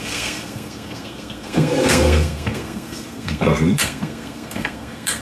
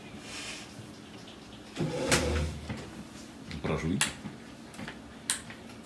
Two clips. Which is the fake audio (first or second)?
first